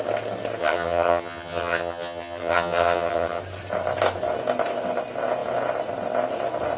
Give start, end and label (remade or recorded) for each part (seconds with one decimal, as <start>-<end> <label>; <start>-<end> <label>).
0.0-0.6 recorded; 0.6-3.4 remade; 3.4-6.8 recorded